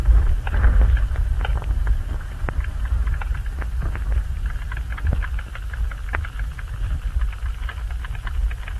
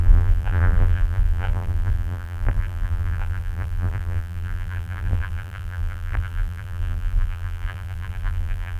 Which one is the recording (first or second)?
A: first